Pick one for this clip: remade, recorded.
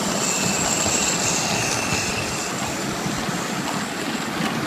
recorded